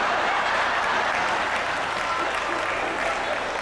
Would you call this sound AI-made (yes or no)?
no